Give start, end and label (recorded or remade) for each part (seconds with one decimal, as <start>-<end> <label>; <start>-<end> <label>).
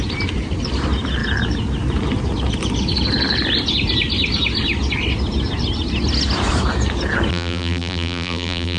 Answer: 0.0-7.3 recorded; 7.3-8.8 remade